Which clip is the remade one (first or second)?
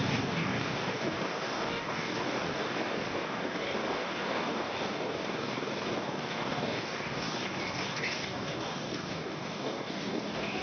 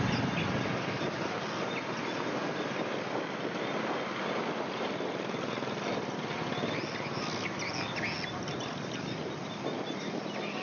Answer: first